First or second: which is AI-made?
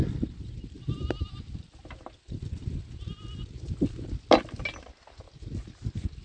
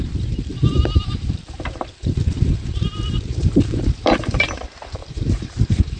second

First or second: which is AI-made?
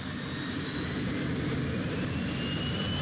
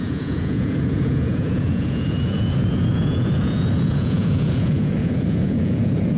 second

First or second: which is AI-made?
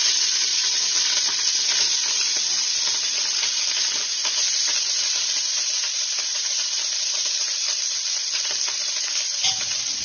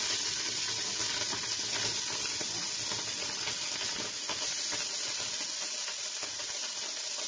first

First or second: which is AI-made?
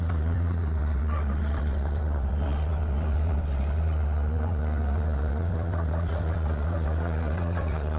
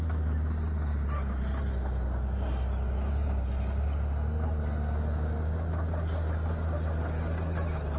first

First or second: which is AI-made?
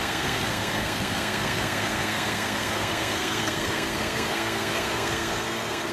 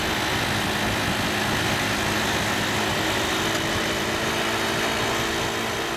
first